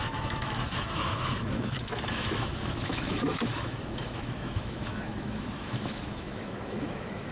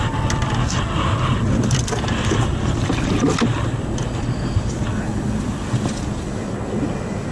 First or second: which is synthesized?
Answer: first